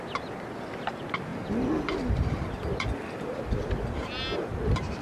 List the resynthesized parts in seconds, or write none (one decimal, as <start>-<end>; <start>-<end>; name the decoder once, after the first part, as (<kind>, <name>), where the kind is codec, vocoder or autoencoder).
none